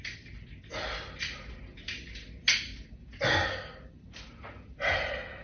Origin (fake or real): real